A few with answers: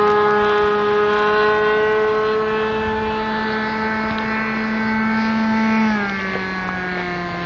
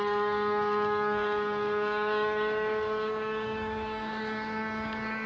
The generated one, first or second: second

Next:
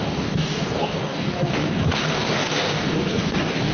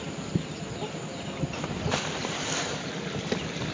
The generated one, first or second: first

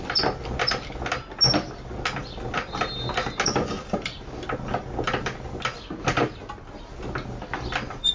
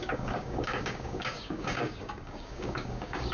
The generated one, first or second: second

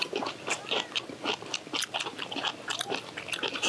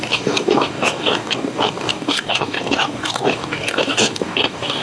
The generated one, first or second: second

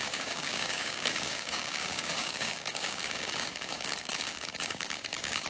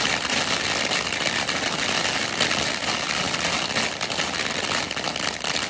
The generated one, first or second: first